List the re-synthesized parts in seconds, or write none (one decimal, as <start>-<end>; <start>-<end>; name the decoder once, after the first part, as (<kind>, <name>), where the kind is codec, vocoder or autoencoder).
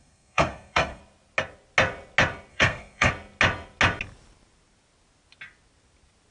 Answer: 0.0-1.0 (codec, SNAC); 2.5-3.1